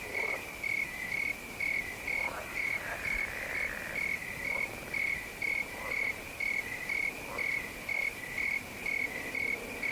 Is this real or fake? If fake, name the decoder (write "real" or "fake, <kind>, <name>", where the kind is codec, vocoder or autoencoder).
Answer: real